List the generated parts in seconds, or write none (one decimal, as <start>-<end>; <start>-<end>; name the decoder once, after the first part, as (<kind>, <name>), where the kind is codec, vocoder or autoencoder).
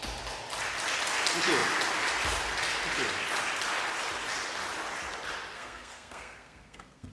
5.5-7.1 (codec, SNAC)